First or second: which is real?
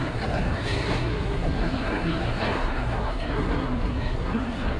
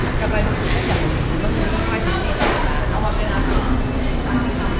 second